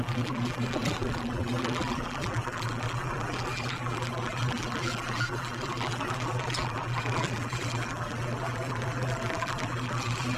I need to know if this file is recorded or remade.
remade